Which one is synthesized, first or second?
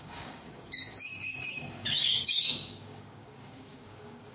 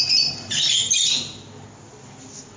first